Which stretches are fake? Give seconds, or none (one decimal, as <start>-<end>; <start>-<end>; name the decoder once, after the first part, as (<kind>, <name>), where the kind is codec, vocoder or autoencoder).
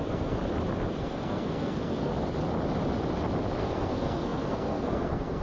0.0-0.4 (codec, SNAC); 1.0-2.1; 3.6-5.4